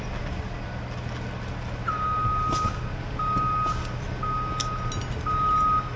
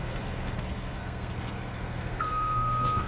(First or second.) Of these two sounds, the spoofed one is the second